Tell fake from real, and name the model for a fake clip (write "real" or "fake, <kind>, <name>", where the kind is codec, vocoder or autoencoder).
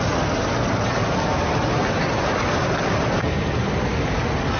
real